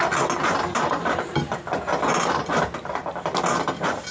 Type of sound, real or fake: real